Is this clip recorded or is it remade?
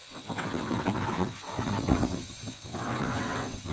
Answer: remade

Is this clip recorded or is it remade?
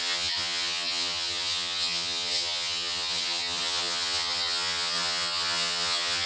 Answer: remade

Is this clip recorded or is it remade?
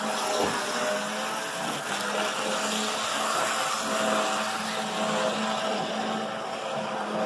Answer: recorded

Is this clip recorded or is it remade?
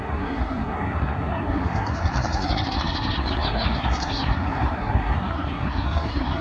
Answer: remade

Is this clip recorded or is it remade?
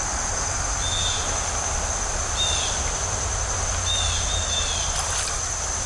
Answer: recorded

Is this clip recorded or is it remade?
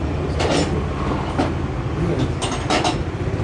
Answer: recorded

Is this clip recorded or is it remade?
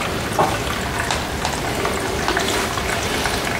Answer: recorded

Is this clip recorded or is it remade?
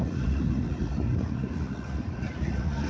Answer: remade